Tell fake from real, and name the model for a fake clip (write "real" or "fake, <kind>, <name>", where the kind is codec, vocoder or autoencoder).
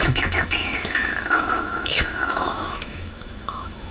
fake, autoencoder, DAC-VAE